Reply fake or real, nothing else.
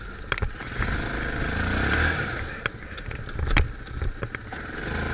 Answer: real